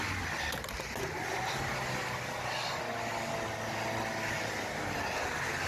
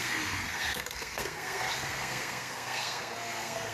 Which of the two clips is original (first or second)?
first